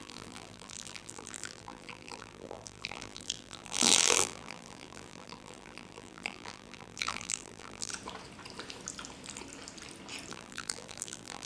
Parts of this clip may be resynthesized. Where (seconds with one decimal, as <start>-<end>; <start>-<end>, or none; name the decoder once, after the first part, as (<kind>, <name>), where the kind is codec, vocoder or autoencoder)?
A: 0.0-7.9 (vocoder, BigVGAN v2); 10.3-11.5